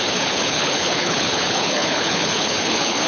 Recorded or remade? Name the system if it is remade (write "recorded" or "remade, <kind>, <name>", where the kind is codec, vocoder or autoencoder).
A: remade, codec, HILCodec